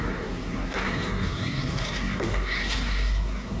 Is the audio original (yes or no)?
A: no